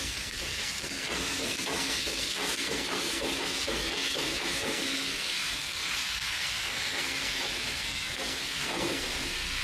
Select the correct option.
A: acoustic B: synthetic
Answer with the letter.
B